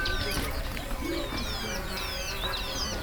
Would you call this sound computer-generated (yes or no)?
no